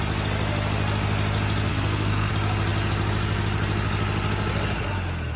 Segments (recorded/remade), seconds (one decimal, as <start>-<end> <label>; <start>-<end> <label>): 0.0-1.7 recorded; 1.7-2.3 remade; 2.3-5.4 recorded